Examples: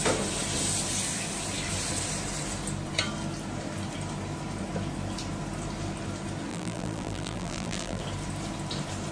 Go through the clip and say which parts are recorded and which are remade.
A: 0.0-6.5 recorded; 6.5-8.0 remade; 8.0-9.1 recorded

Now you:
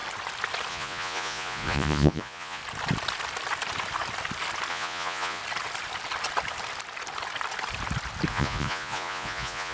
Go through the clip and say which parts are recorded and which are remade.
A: 0.0-0.7 recorded; 0.7-2.6 remade; 2.6-4.7 recorded; 4.7-5.4 remade; 5.4-8.3 recorded; 8.3-9.7 remade

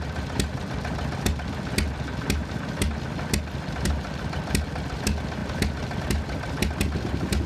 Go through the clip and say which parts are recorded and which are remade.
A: 0.0-7.5 recorded

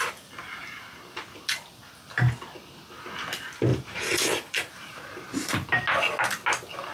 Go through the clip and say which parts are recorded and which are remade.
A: 0.0-3.7 recorded; 3.7-5.5 remade; 5.5-6.9 recorded

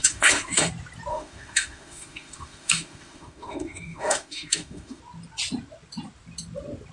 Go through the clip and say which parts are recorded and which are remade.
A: 0.0-0.7 remade; 0.7-1.1 recorded; 1.1-5.0 remade; 5.0-6.9 recorded